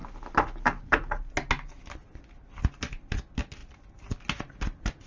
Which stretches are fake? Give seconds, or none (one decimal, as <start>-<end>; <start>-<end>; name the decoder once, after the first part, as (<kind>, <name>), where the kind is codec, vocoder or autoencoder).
none